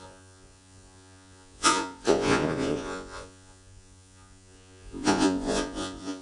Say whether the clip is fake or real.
fake